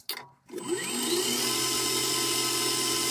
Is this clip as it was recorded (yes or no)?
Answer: yes